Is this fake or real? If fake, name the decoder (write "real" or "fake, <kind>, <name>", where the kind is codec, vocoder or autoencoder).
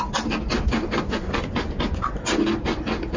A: real